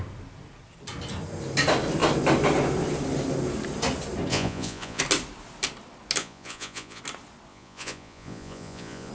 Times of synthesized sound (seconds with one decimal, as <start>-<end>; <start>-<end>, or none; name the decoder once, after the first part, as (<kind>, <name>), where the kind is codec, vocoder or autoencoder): 4.3-5.0 (vocoder, Vocos); 6.2-7.0; 7.5-9.1